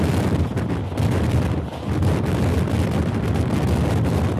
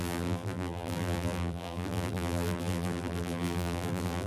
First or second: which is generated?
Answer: second